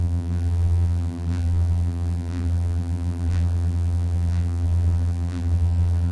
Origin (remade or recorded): remade